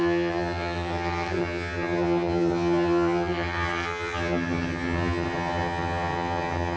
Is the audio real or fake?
fake